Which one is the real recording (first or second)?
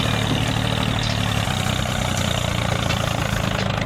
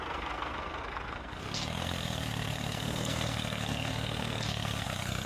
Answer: first